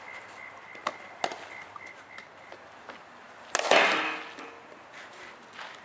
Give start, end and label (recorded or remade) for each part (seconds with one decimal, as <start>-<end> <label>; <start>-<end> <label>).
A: 0.0-5.8 recorded